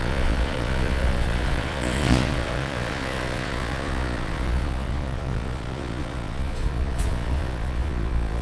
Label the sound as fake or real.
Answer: fake